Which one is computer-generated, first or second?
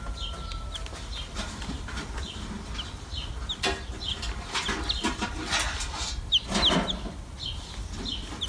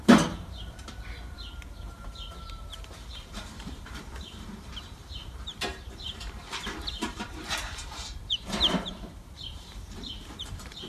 second